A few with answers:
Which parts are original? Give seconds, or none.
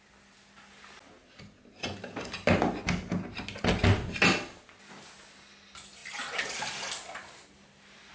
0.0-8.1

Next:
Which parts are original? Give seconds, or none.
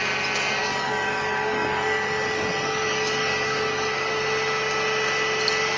0.0-0.6; 4.1-5.8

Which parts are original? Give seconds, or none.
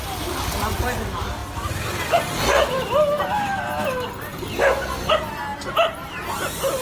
0.0-6.8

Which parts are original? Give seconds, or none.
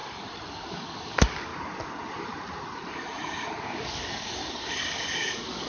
0.0-0.5; 1.5-3.6; 4.4-4.9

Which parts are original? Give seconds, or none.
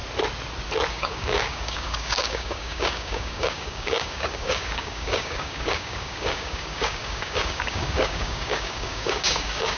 0.0-0.9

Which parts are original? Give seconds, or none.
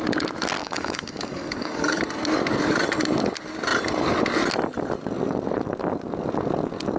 0.0-0.6; 2.0-7.0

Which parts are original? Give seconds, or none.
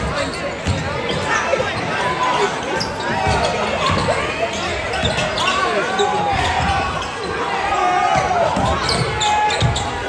0.0-10.1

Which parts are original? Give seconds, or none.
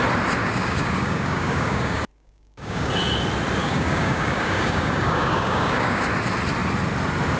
0.0-0.4; 2.9-3.6; 6.1-7.4